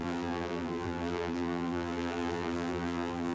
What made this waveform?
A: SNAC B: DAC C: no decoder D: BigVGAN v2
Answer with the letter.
D